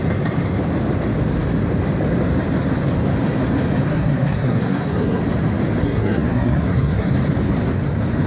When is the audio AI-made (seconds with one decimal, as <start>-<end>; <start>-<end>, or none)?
3.9-5.2; 5.8-7.1